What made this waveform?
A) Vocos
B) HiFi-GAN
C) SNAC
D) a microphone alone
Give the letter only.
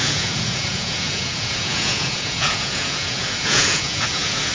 A